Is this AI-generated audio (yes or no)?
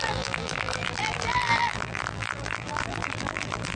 yes